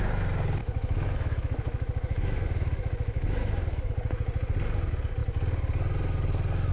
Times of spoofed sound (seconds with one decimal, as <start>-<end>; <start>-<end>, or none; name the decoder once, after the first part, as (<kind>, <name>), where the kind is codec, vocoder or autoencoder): 0.6-3.9 (autoencoder, DAC-VAE)